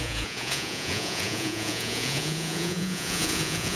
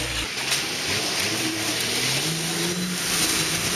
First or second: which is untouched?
second